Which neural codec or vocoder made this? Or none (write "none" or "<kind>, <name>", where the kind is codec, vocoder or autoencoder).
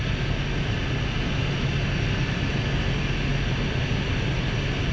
none